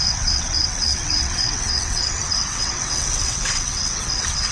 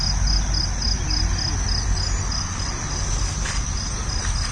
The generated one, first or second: first